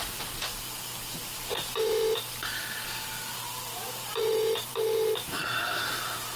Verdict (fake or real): fake